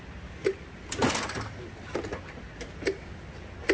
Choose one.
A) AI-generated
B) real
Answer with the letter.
B